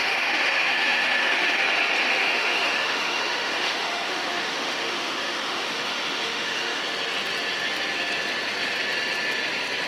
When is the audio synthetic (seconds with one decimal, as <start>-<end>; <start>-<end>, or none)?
0.0-1.6; 2.1-6.8